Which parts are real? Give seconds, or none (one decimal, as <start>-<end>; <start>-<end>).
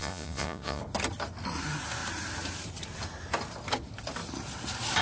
0.8-5.0